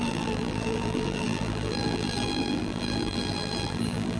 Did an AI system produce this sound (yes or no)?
yes